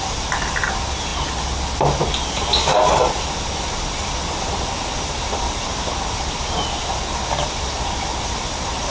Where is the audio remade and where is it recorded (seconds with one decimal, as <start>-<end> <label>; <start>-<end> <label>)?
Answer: 0.0-8.9 recorded

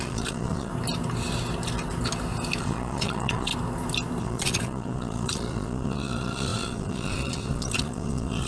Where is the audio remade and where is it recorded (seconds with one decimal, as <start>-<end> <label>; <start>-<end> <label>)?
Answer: 0.0-0.7 remade; 0.7-2.6 recorded; 2.6-3.5 remade; 3.5-4.2 recorded; 4.2-8.5 remade

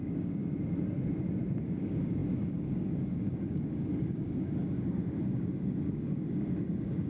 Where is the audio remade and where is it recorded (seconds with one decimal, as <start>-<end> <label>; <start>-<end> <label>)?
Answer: 0.0-0.4 remade; 0.4-1.6 recorded; 1.6-7.1 remade